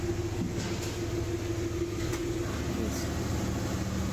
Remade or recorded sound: recorded